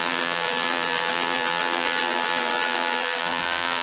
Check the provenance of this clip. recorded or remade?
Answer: remade